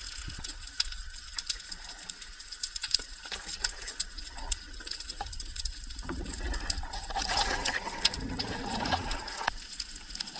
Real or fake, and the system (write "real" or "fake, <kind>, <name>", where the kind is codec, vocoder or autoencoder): fake, vocoder, Vocos